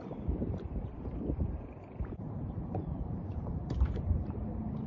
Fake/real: fake